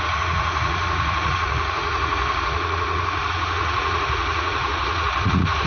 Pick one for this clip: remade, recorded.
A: remade